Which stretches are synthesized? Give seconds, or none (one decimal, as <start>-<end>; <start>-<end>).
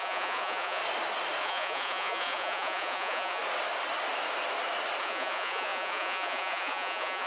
0.0-0.8; 1.4-3.4; 5.0-7.3